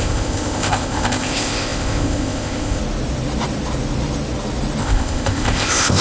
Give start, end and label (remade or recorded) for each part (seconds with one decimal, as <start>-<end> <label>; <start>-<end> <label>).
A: 0.0-2.8 remade; 2.8-4.8 recorded; 4.8-6.0 remade